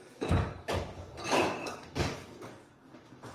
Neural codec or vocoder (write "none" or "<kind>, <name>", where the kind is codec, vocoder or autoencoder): codec, DAC